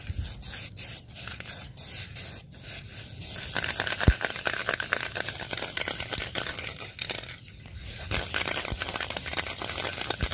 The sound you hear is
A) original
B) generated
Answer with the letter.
A